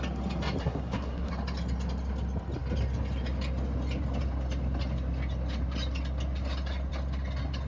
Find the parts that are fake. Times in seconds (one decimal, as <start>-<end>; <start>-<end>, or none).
0.6-1.3